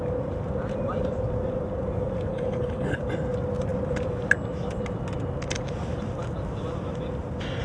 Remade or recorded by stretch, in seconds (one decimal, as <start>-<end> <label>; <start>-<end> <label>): 0.0-2.3 recorded; 2.3-3.0 remade; 3.0-7.6 recorded